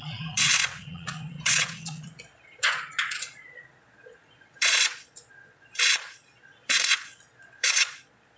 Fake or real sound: fake